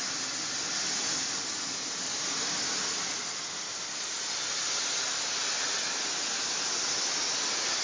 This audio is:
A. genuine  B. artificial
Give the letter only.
A